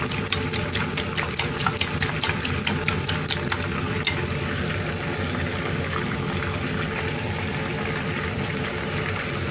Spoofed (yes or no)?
no